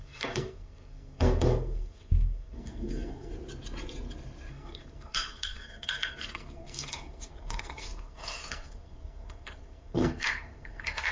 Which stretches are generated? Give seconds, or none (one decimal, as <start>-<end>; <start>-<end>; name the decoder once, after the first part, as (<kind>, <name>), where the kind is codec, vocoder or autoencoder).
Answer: 0.0-3.3 (codec, SNAC); 4.5-11.1